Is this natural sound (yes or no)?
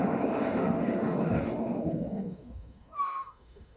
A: no